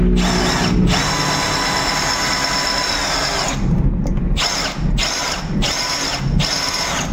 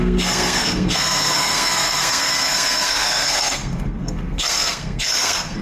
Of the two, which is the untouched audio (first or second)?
first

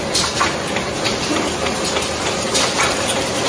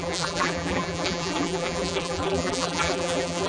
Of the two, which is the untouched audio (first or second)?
first